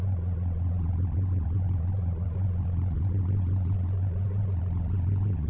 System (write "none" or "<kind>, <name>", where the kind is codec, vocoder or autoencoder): vocoder, Vocos